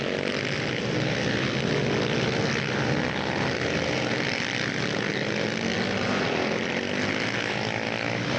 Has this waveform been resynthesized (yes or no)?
no